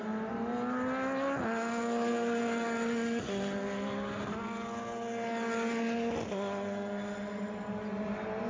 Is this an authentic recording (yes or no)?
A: yes